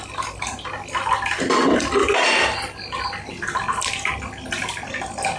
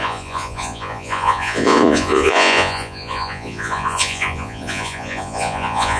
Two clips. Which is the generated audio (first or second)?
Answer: second